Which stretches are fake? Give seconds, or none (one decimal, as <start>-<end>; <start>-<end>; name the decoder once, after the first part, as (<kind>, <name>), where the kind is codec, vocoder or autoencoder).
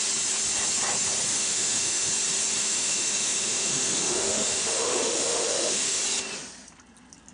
1.3-2.1 (autoencoder, DAC-VAE); 2.6-6.0